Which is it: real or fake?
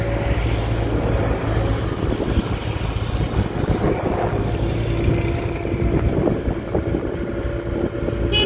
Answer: real